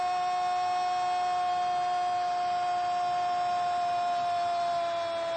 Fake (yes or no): no